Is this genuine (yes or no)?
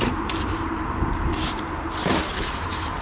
no